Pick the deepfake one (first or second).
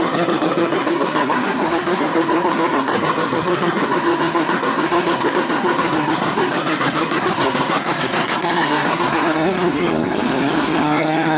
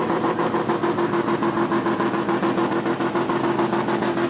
first